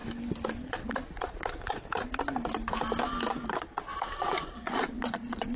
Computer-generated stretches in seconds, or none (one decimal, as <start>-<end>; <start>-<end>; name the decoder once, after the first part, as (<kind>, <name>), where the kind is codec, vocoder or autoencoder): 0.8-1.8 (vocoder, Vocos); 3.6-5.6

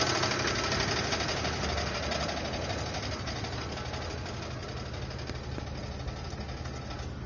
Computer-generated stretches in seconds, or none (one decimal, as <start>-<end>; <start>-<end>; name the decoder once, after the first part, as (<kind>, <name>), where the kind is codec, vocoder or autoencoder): none

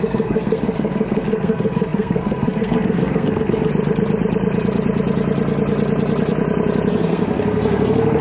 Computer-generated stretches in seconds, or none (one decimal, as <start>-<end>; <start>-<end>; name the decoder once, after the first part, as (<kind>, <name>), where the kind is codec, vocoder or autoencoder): 0.0-3.7 (codec, SNAC); 6.9-8.2